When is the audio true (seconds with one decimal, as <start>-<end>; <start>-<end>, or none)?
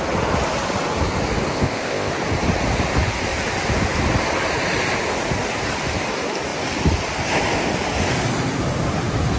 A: 0.0-1.5; 2.1-9.4